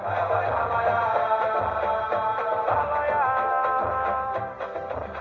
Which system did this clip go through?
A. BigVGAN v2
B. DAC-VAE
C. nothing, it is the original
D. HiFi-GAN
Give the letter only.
C